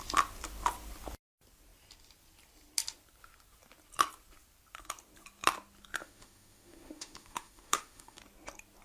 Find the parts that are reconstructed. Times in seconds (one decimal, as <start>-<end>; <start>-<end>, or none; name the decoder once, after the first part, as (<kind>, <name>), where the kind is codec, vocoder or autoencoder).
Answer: 6.0-8.2 (autoencoder, DAC-VAE)